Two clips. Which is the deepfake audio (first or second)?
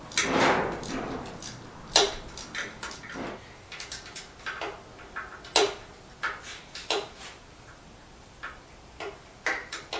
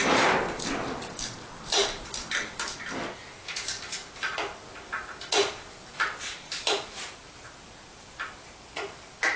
second